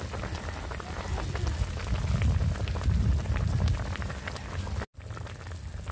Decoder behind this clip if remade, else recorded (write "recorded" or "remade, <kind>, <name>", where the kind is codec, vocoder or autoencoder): recorded